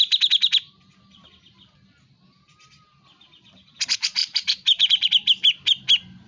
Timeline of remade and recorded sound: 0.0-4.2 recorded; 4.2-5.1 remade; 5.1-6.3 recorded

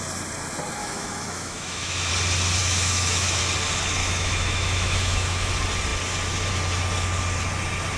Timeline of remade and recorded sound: 0.0-0.8 recorded; 0.8-2.1 remade; 2.1-2.6 recorded; 2.6-3.4 remade; 3.4-4.0 recorded; 4.0-5.5 remade; 5.5-8.0 recorded

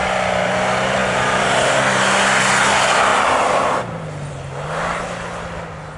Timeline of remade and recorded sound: 0.0-1.0 recorded; 1.0-1.8 remade; 1.8-6.0 recorded

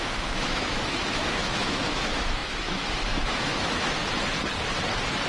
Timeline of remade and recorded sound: 0.0-4.0 remade; 4.0-5.3 recorded